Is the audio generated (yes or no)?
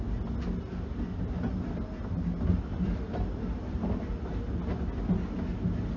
no